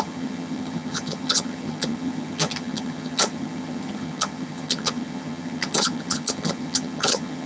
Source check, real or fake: fake